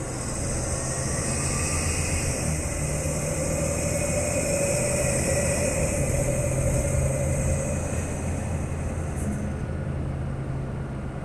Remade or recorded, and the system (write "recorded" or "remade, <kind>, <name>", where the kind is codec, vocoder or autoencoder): recorded